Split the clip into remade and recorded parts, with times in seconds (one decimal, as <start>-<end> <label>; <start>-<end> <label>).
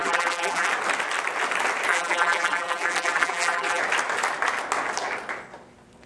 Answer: 0.0-0.7 remade; 0.7-1.9 recorded; 1.9-3.8 remade; 3.8-6.1 recorded